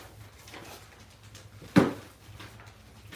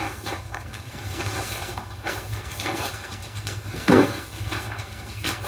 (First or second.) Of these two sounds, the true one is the first